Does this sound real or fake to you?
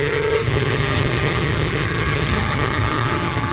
fake